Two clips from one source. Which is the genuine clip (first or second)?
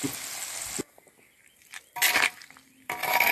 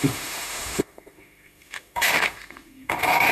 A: first